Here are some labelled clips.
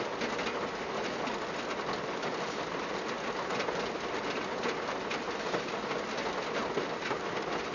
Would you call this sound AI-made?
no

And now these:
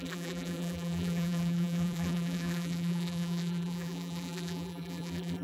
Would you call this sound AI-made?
yes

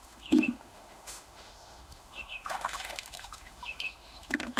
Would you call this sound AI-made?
yes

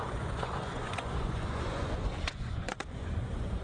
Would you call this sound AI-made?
yes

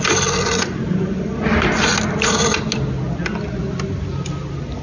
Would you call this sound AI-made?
no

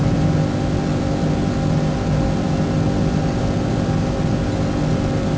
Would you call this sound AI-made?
no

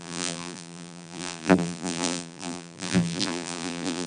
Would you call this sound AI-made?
yes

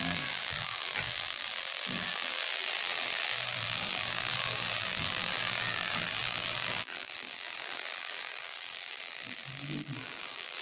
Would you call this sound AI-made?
yes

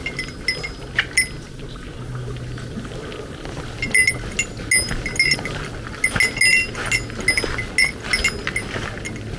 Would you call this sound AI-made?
no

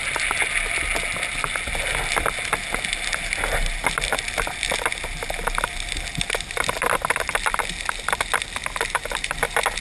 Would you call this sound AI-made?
no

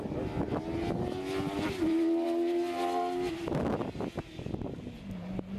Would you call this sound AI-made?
no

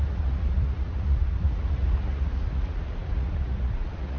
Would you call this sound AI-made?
yes